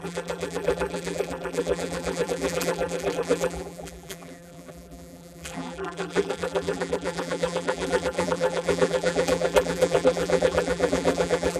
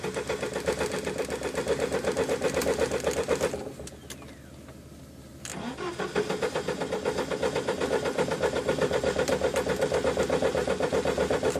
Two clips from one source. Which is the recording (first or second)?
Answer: second